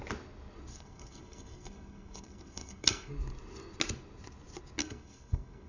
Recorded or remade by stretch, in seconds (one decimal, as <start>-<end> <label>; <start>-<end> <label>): 0.0-0.7 recorded; 0.7-3.1 remade; 3.1-4.8 recorded; 4.8-5.7 remade